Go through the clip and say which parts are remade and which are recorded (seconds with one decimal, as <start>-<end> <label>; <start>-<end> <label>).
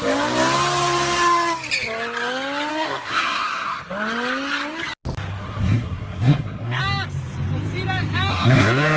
0.0-2.7 recorded; 2.7-3.8 remade; 3.8-5.3 recorded; 5.3-6.8 remade; 6.8-8.3 recorded; 8.3-9.0 remade